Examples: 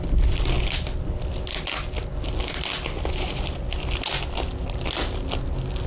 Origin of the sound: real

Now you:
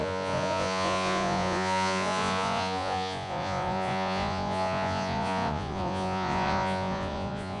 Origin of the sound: fake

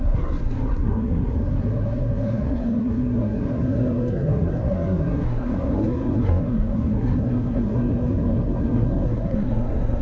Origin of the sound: fake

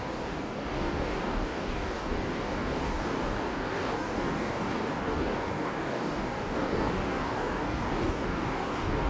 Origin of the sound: fake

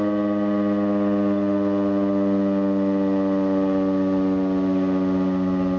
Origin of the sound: real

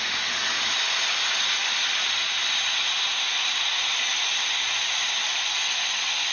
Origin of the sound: real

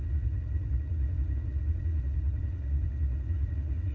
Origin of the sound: fake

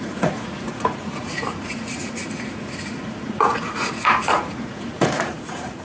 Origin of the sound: fake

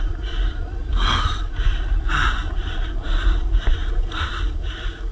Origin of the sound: fake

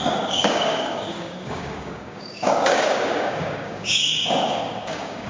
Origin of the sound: fake